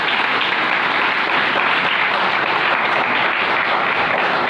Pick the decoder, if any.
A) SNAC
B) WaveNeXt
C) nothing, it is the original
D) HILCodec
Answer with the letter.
C